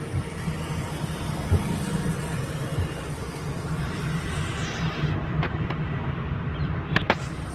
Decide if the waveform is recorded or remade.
recorded